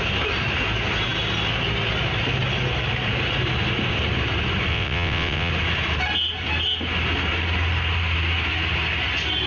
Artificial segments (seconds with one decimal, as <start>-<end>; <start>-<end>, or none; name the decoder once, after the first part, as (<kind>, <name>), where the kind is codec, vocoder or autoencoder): 4.7-5.5 (vocoder, WaveNeXt)